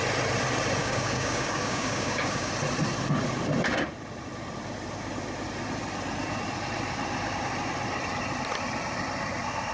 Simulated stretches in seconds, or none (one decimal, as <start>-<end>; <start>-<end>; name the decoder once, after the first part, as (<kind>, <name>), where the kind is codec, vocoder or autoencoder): 0.8-2.5 (codec, DAC)